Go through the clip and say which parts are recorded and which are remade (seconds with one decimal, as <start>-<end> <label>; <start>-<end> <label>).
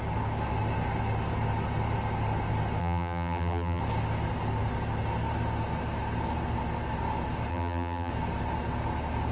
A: 0.0-2.8 recorded; 2.8-3.8 remade; 3.8-7.5 recorded; 7.5-8.1 remade; 8.1-9.3 recorded